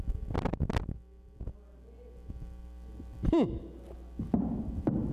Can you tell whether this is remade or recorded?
recorded